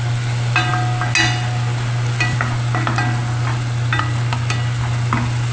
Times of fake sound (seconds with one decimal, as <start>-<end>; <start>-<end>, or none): none